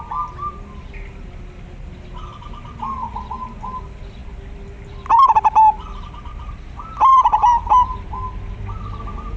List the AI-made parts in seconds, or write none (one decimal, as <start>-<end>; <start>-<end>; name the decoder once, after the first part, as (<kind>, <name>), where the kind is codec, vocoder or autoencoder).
7.1-9.0 (vocoder, BigVGAN v2)